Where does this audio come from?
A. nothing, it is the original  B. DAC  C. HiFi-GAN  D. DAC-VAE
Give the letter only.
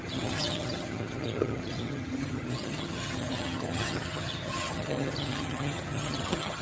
C